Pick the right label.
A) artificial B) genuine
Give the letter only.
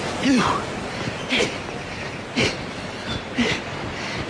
B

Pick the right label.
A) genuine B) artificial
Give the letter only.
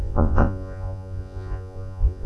B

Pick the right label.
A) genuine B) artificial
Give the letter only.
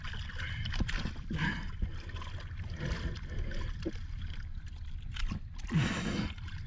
A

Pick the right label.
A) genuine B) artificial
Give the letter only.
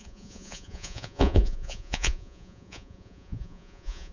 B